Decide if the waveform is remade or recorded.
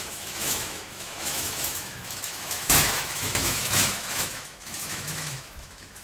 remade